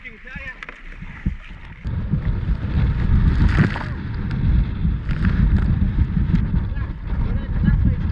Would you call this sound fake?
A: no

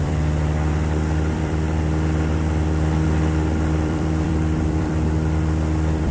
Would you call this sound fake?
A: yes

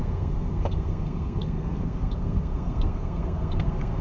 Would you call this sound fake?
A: yes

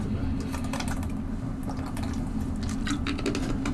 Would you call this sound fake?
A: no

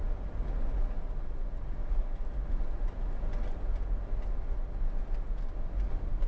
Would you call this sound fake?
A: no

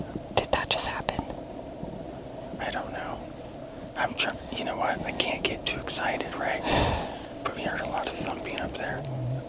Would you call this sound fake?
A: no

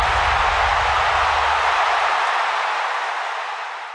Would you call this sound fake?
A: no